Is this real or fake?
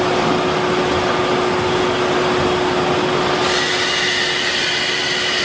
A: real